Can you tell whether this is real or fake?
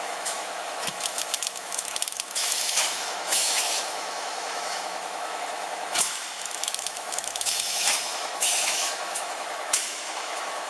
fake